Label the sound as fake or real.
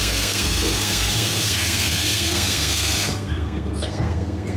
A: fake